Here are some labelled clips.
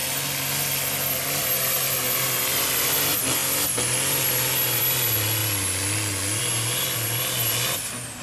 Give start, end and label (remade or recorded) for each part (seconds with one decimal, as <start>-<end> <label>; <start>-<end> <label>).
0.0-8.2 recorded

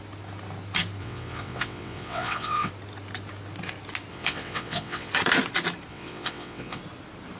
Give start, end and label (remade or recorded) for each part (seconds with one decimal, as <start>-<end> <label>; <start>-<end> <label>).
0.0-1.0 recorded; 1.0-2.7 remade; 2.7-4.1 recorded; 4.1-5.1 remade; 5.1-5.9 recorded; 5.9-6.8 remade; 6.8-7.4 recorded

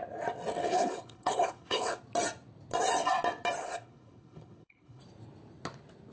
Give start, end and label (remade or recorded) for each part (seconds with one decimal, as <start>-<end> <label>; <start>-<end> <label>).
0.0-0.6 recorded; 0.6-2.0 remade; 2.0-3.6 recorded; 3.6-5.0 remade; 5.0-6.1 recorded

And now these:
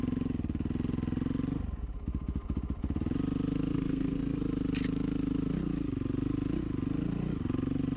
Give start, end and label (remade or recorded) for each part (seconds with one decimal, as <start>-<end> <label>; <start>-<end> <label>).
0.0-3.7 recorded; 3.7-4.4 remade; 4.4-8.0 recorded

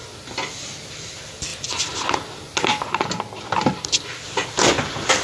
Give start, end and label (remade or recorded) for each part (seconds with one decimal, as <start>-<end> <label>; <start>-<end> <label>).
0.0-5.2 recorded

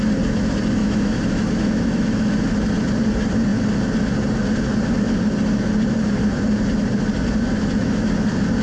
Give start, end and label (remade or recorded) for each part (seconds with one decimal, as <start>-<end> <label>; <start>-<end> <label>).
0.0-0.8 recorded; 0.8-2.4 remade; 2.4-7.5 recorded; 7.5-8.1 remade; 8.1-8.6 recorded

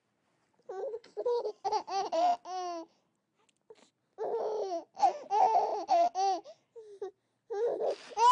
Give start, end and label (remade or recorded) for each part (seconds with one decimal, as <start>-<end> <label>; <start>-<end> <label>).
0.0-0.8 recorded; 0.8-1.5 remade; 1.5-8.3 recorded